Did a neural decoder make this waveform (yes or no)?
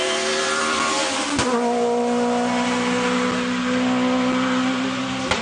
no